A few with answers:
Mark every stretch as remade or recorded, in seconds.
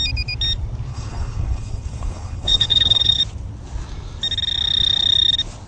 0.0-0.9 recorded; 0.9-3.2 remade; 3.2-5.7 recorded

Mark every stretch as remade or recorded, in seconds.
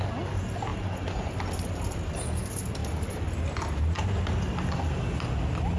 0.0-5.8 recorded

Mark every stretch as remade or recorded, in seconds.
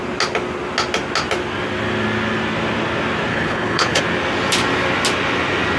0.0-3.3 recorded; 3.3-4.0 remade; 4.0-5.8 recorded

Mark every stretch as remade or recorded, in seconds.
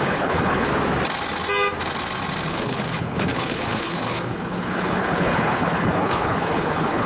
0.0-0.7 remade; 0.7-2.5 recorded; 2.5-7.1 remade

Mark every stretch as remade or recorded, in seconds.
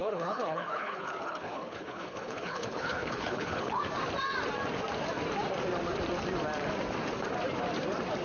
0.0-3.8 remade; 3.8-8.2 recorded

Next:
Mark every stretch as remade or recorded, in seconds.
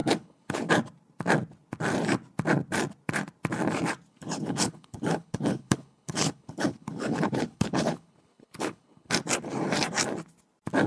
0.0-0.7 remade; 0.7-4.1 recorded; 4.1-9.1 remade; 9.1-10.9 recorded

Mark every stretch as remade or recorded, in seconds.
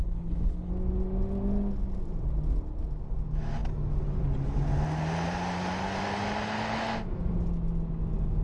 0.0-0.7 remade; 0.7-8.4 recorded